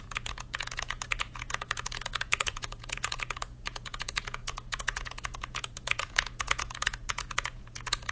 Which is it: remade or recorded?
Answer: remade